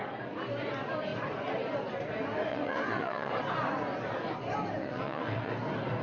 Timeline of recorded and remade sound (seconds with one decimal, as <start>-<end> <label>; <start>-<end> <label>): 0.0-2.5 recorded; 2.5-3.3 remade; 3.3-4.8 recorded; 4.8-5.5 remade; 5.5-6.0 recorded